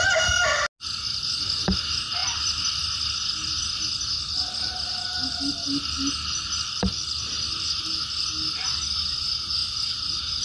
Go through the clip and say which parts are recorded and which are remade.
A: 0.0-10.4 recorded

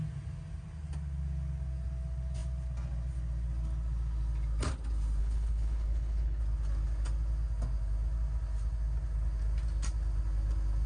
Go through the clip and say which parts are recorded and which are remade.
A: 0.0-5.2 recorded; 5.2-6.4 remade; 6.4-10.9 recorded